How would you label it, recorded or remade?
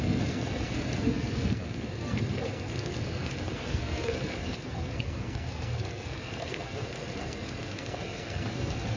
remade